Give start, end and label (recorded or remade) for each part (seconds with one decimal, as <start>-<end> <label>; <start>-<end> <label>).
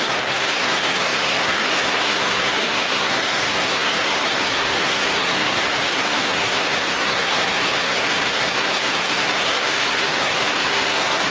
0.0-11.3 remade